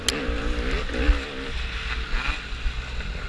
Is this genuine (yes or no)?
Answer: yes